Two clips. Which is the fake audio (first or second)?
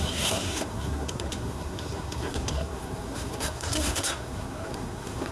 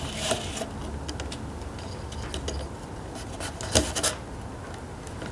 first